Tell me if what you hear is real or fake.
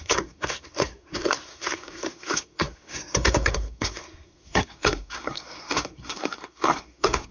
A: fake